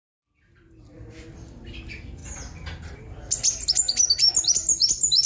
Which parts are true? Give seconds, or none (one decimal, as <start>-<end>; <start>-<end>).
0.0-5.3